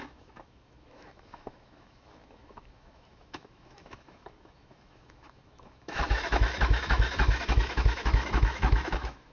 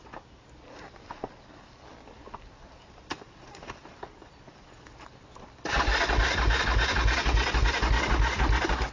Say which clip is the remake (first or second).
first